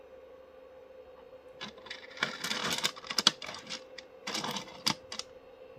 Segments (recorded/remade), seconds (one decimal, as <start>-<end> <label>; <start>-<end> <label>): 0.0-5.8 recorded